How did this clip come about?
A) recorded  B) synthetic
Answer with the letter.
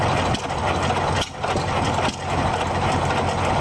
A